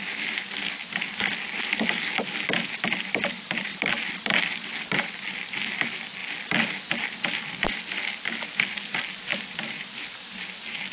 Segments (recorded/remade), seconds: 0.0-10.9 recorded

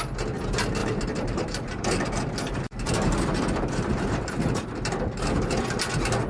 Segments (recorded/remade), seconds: 0.0-0.8 recorded; 0.8-4.6 remade; 4.6-6.3 recorded

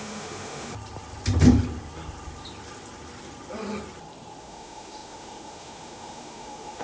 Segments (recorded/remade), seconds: 0.0-0.7 remade; 0.7-4.4 recorded; 4.4-6.8 remade

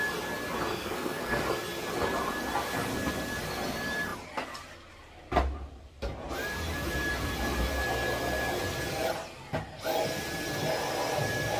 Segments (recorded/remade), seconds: 0.0-0.7 recorded; 0.7-1.4 remade; 1.4-11.6 recorded

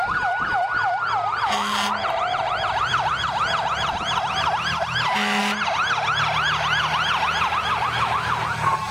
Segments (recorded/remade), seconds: 0.0-2.0 recorded; 2.0-4.0 remade; 4.0-8.9 recorded

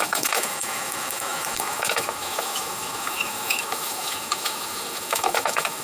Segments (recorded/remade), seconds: 0.0-5.8 remade